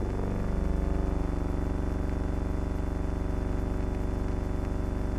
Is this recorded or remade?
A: recorded